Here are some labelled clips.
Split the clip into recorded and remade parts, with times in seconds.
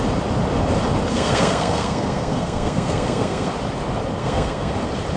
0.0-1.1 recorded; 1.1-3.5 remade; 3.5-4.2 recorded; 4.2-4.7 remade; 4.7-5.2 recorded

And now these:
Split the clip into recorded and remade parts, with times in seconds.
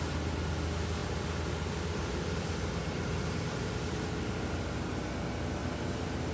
0.0-5.6 recorded; 5.6-6.3 remade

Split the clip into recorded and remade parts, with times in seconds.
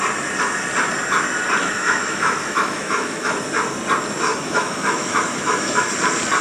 0.0-1.6 recorded; 1.6-3.4 remade; 3.4-4.3 recorded; 4.3-5.9 remade; 5.9-6.4 recorded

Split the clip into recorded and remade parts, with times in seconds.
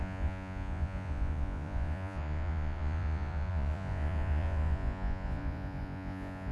0.0-6.5 remade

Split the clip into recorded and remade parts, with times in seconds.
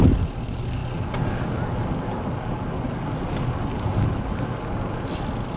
0.0-5.6 recorded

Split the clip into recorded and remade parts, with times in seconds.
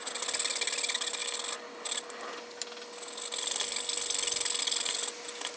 0.0-5.6 recorded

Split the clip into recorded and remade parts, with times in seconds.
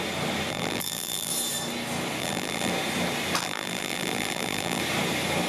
0.0-0.5 recorded; 0.5-1.3 remade; 1.3-2.2 recorded; 2.2-2.7 remade; 2.7-3.4 recorded; 3.4-4.8 remade; 4.8-5.5 recorded